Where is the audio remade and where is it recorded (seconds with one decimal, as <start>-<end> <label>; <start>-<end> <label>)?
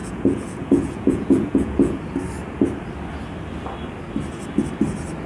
0.0-2.0 remade; 2.0-5.3 recorded